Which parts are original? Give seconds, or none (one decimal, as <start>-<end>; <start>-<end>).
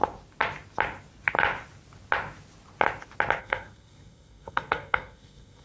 0.0-3.4